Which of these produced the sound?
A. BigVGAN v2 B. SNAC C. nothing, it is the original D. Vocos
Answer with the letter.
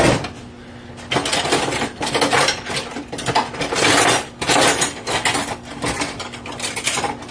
C